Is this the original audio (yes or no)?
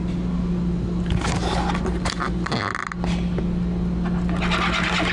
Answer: yes